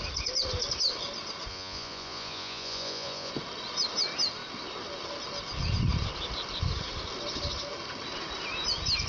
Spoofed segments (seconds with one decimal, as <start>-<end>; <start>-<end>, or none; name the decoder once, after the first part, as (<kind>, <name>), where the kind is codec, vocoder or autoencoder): 1.5-3.3 (vocoder, Vocos)